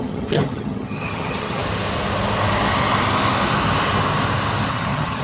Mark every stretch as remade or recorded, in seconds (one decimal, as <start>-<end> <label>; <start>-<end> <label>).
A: 0.0-1.6 remade; 1.6-4.7 recorded; 4.7-5.2 remade